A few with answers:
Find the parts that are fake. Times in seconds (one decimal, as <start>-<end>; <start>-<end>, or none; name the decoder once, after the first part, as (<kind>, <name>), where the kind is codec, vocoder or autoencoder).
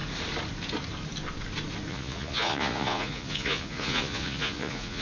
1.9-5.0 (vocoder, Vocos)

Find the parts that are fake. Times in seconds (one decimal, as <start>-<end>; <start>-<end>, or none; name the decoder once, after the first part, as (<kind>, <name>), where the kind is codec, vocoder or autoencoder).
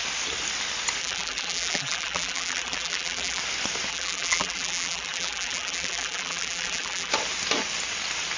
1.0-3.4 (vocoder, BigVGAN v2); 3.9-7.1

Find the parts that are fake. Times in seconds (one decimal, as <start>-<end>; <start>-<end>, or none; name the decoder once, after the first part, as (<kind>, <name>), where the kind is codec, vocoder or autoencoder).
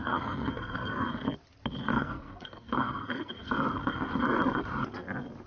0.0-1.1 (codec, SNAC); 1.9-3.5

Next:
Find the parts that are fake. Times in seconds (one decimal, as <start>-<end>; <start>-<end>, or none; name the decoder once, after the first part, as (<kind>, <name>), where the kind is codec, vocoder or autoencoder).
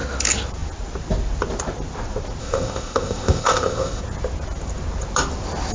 2.4-4.0 (codec, ZipCodec)